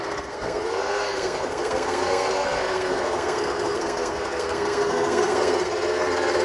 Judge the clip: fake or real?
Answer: fake